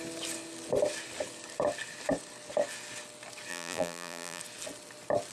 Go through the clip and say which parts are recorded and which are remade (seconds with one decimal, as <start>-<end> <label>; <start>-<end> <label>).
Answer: 0.0-3.5 recorded; 3.5-4.4 remade; 4.4-5.3 recorded